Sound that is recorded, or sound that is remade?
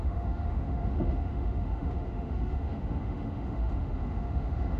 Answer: remade